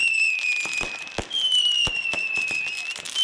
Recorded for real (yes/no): yes